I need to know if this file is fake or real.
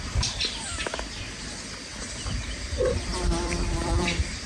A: real